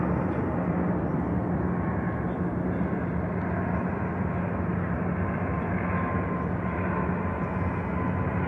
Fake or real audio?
real